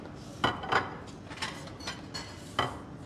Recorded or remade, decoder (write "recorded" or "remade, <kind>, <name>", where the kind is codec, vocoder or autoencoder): recorded